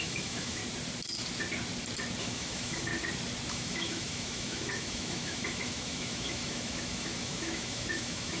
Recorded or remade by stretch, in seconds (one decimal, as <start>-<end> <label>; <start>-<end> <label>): 0.0-0.6 remade; 0.6-2.2 recorded; 2.2-2.9 remade; 2.9-3.5 recorded; 3.5-8.4 remade